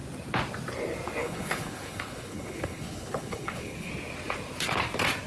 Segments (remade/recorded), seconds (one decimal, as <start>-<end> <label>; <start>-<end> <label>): 0.0-1.2 recorded; 1.2-3.9 remade; 3.9-5.3 recorded